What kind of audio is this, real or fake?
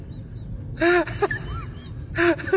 real